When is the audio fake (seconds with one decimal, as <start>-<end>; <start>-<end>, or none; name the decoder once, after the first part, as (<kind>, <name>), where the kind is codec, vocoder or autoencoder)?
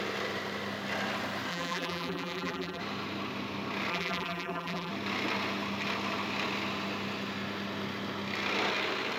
1.5-2.8 (vocoder, BigVGAN v2); 3.9-4.9